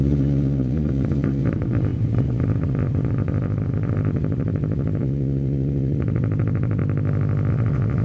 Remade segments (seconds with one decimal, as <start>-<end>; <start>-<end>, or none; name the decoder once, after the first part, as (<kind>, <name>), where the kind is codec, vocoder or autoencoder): 0.0-6.8 (vocoder, Vocos); 7.5-8.0